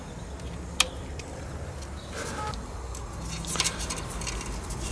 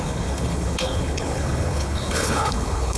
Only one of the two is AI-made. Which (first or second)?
second